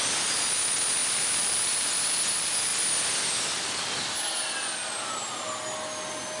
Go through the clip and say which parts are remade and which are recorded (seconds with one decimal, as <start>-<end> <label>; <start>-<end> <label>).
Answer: 0.0-6.4 recorded